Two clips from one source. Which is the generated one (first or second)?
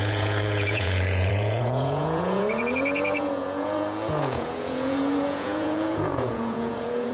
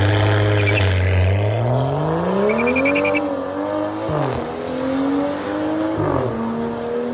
first